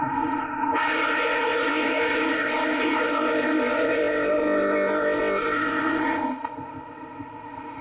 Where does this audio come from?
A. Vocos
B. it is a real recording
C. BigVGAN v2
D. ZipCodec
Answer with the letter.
D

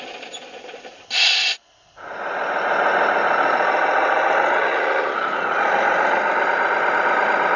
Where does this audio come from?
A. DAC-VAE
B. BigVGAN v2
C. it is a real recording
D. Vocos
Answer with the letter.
C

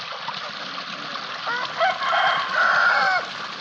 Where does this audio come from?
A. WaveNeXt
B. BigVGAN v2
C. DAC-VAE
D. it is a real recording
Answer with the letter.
D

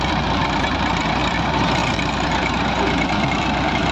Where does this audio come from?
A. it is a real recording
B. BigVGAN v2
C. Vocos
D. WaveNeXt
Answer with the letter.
B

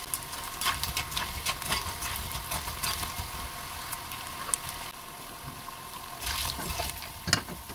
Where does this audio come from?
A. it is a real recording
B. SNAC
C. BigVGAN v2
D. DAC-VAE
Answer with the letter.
A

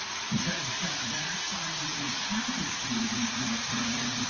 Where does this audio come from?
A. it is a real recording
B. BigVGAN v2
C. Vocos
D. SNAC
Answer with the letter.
C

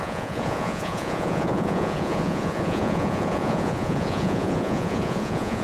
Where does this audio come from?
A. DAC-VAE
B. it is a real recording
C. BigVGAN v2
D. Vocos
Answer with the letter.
D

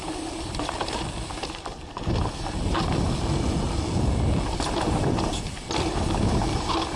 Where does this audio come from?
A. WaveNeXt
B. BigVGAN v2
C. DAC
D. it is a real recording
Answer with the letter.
D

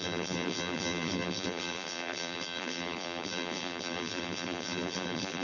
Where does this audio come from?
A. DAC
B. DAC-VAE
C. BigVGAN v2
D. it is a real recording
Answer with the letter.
C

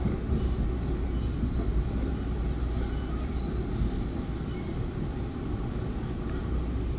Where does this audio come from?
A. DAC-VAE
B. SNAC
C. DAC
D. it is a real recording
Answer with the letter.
D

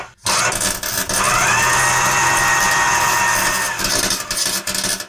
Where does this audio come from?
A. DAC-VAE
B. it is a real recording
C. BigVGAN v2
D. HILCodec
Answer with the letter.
B